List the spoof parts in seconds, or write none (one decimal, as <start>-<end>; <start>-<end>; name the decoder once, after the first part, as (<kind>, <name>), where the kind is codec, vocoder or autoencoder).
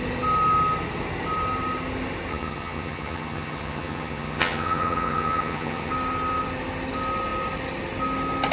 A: 2.3-5.9 (vocoder, HiFi-GAN)